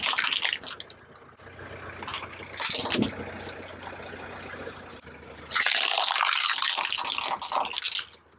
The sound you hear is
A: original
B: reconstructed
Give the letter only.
A